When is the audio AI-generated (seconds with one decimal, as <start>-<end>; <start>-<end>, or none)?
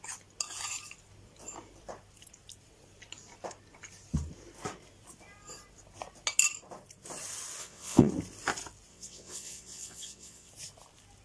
7.6-8.1; 8.9-10.5